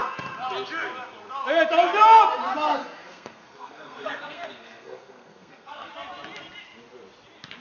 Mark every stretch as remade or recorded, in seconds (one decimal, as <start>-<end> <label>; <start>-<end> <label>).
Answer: 0.0-2.8 recorded; 2.8-5.9 remade; 5.9-7.6 recorded